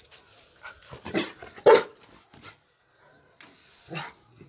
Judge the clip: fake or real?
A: real